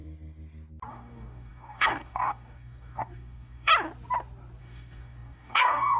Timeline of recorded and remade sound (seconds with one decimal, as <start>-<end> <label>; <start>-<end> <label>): 0.0-0.9 recorded; 0.9-3.7 remade; 3.7-4.6 recorded; 4.6-6.0 remade